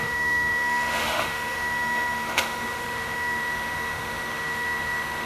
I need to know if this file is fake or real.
fake